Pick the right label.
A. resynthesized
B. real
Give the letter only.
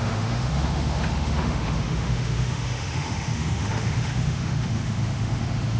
A